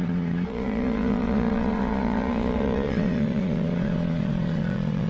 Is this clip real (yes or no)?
no